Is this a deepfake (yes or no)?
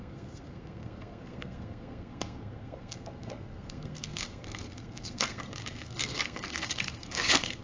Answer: yes